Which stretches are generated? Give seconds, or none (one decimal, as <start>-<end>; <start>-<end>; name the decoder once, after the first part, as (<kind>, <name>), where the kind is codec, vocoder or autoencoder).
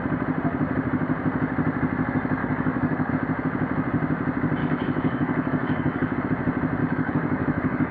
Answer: 2.4-3.1 (codec, DAC); 4.6-6.2; 6.8-7.9